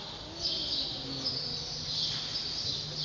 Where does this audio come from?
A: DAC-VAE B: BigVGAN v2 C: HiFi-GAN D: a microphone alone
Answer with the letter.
D